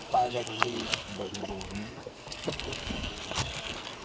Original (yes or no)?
no